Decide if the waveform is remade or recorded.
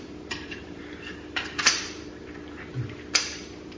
remade